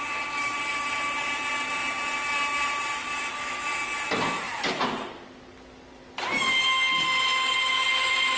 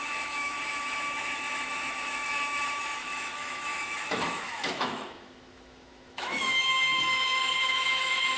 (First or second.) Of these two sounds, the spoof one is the second